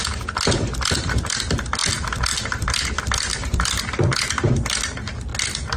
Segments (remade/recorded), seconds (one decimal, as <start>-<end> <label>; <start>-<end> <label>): 0.0-5.8 recorded